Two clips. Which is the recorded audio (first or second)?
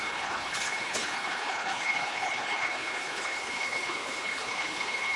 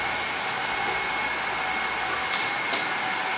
second